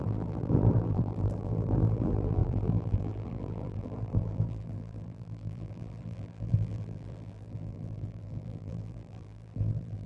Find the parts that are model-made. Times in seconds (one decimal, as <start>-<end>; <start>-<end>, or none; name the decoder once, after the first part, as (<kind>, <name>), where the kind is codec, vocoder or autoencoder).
0.0-10.1 (vocoder, BigVGAN v2)